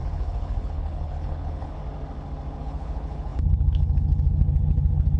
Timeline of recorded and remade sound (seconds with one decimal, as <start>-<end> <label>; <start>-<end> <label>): 0.0-1.8 remade; 1.8-2.6 recorded; 2.6-5.2 remade